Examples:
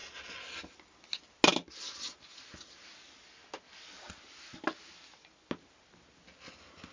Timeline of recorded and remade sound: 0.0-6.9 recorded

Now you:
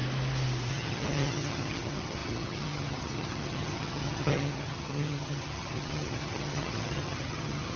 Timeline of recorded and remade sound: 0.0-0.7 recorded; 0.7-7.8 remade